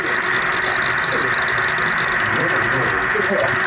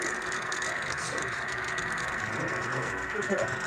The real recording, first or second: first